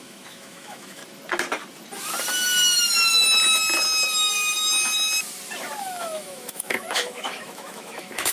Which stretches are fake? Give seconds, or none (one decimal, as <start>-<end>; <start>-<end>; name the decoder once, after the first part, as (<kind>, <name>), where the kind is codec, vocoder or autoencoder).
0.0-1.0 (autoencoder, DAC-VAE); 5.8-8.3